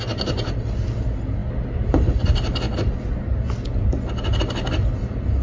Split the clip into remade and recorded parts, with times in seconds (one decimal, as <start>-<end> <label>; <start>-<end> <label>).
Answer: 0.0-5.4 recorded